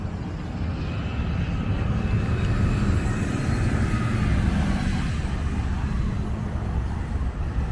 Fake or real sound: real